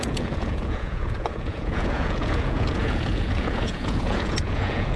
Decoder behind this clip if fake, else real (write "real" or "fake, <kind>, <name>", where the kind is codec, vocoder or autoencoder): fake, vocoder, Vocos